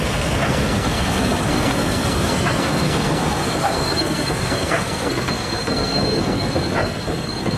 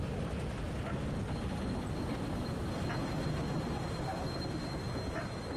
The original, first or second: second